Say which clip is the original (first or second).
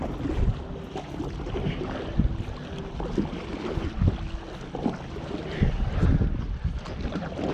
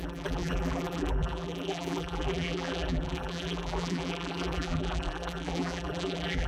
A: first